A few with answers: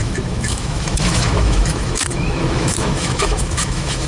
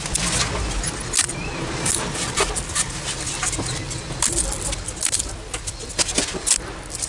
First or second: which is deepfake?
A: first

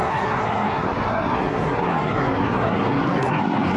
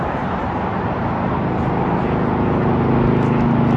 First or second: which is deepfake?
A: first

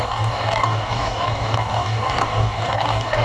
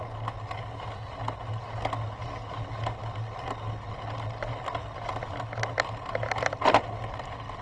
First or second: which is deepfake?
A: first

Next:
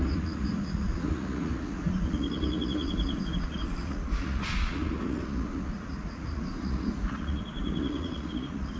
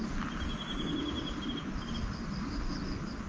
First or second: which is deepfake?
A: first